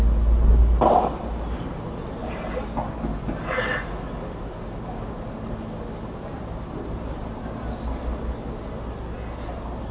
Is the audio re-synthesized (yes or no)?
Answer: no